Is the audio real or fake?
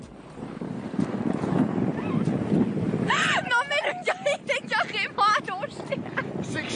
real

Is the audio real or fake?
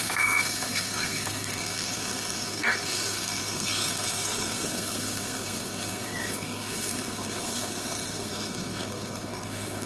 fake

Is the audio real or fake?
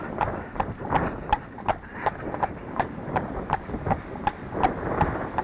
real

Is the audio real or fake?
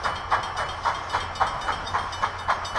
real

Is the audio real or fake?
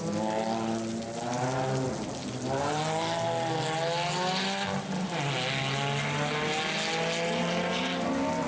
real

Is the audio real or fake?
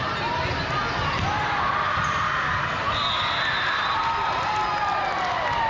real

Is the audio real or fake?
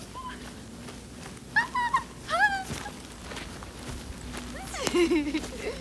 real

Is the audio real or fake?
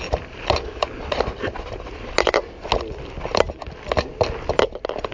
real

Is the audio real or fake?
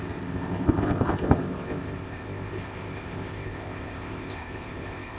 fake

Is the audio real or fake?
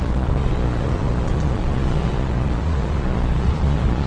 fake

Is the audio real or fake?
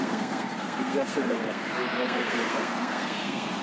fake